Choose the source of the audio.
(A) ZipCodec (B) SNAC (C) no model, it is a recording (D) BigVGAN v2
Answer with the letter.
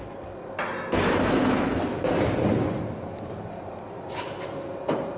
C